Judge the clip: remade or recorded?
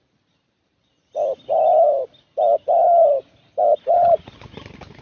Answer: recorded